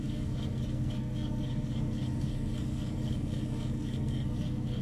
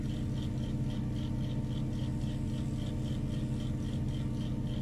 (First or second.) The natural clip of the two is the second